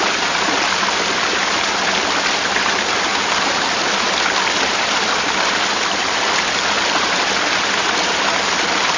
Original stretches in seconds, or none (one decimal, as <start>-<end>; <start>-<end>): 0.0-9.0